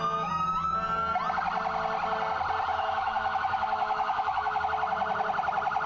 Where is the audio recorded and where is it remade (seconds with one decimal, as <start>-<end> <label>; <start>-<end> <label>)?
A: 0.0-2.7 recorded; 2.7-4.6 remade; 4.6-5.9 recorded